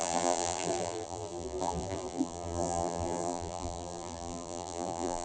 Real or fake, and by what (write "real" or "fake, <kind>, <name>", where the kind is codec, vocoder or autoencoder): fake, vocoder, BigVGAN v2